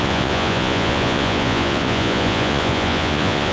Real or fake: fake